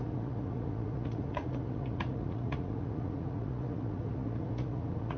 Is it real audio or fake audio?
fake